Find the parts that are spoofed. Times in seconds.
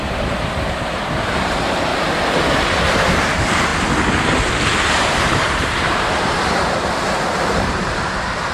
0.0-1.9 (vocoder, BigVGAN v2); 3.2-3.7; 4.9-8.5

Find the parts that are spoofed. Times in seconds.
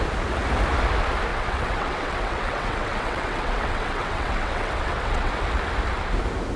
1.3-5.3 (vocoder, WaveNeXt)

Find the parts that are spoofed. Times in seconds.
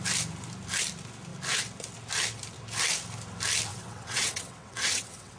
3.7-5.4 (vocoder, WaveNeXt)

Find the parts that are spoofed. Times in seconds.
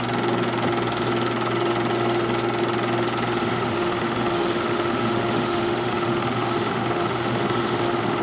3.4-8.2 (autoencoder, DAC-VAE)